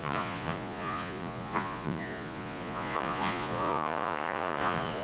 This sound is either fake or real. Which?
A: fake